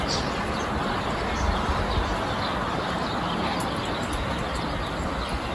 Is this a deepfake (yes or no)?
no